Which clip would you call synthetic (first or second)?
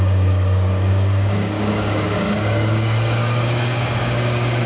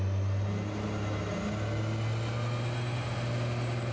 first